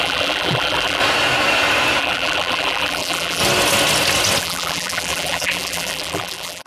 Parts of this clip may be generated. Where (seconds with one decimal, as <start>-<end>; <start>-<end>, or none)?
0.0-1.0; 2.0-3.4; 4.4-6.7